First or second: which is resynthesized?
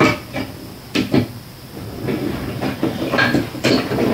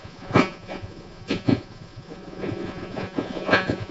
second